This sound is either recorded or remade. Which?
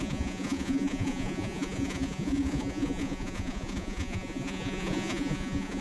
remade